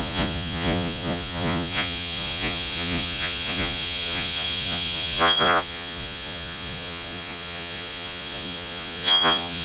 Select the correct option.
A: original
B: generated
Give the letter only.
B